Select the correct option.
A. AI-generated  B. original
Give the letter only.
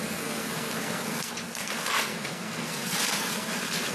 A